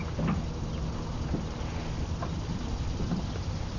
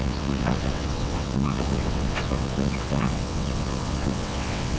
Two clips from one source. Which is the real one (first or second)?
first